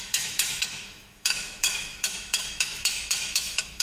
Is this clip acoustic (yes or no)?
no